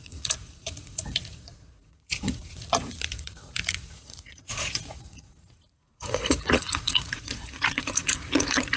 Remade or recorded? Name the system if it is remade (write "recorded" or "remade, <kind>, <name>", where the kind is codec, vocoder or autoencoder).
remade, vocoder, Vocos